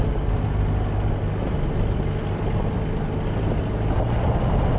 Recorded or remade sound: recorded